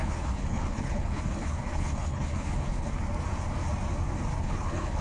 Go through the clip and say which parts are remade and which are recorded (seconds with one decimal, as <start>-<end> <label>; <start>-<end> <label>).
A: 0.0-3.0 remade; 3.0-4.3 recorded; 4.3-5.0 remade